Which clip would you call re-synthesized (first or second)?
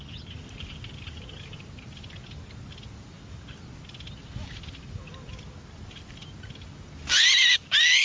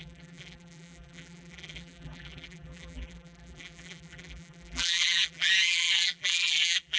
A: second